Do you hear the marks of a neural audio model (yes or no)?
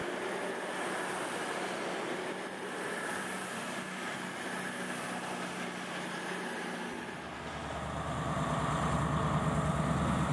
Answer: no